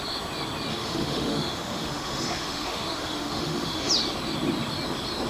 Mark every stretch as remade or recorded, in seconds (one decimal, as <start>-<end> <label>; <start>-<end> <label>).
0.0-0.7 recorded; 0.7-3.9 remade; 3.9-5.3 recorded